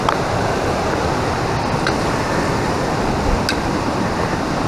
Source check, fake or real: real